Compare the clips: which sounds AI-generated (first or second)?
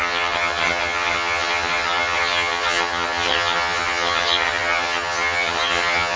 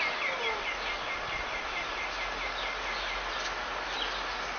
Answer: first